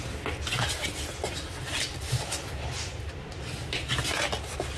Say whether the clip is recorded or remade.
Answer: recorded